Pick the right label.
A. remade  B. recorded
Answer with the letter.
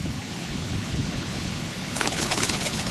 A